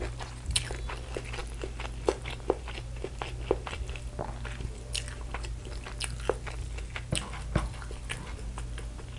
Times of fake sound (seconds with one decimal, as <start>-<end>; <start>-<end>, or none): none